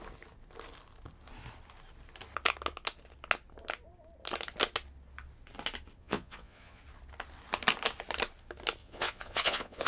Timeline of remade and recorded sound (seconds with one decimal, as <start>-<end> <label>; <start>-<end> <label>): 0.0-6.0 recorded; 6.0-6.8 remade; 6.8-8.8 recorded; 8.8-9.9 remade